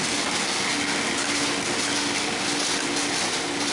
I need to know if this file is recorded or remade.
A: recorded